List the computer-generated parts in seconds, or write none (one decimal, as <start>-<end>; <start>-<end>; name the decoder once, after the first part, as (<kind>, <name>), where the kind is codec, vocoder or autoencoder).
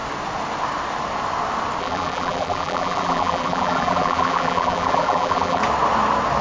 1.8-5.6 (vocoder, BigVGAN v2)